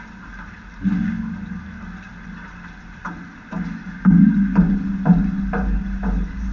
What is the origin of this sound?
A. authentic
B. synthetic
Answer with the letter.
A